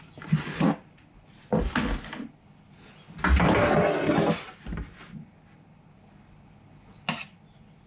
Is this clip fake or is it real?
real